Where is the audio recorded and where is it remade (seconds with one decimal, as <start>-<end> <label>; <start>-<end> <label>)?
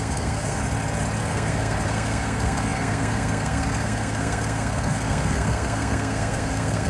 0.0-0.6 remade; 0.6-1.2 recorded; 1.2-6.9 remade